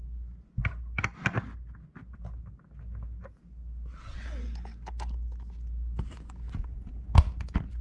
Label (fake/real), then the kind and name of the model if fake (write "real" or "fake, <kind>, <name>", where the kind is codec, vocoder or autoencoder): real